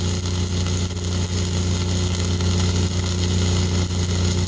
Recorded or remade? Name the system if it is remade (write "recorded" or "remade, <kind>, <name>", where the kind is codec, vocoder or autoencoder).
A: recorded